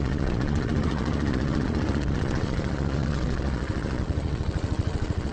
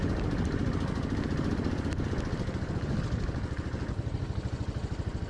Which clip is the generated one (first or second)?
first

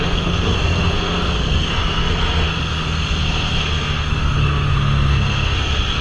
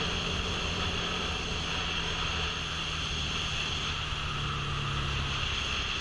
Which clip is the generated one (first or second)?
first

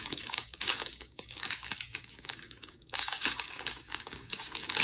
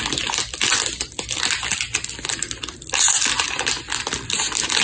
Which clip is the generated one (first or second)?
first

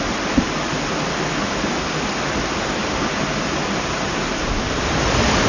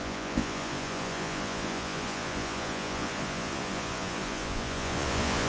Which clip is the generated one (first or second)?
second